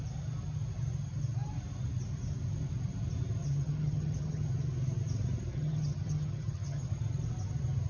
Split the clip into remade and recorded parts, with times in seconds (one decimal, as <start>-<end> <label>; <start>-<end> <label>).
0.0-3.4 recorded; 3.4-4.4 remade; 4.4-5.5 recorded; 5.5-6.9 remade; 6.9-7.9 recorded